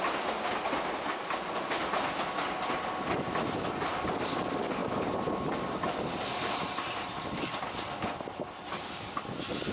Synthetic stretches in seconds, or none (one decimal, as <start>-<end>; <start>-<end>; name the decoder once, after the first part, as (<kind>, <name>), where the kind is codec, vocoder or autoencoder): 4.8-7.6 (vocoder, BigVGAN v2)